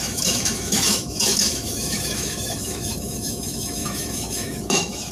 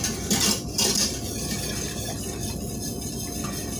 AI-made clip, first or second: first